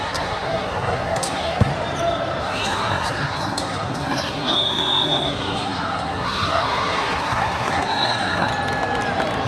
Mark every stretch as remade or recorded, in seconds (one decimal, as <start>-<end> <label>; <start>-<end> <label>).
0.0-1.7 remade; 1.7-2.4 recorded; 2.4-8.5 remade; 8.5-9.5 recorded